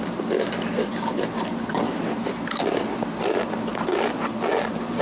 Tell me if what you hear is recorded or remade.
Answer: recorded